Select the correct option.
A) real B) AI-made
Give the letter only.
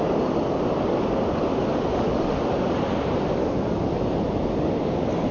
A